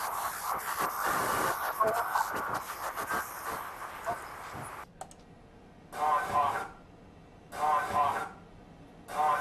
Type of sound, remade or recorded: recorded